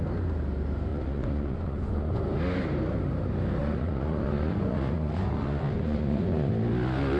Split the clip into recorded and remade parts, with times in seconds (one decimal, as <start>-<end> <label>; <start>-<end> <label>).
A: 0.0-0.9 recorded; 0.9-2.2 remade; 2.2-3.6 recorded; 3.6-6.5 remade; 6.5-7.2 recorded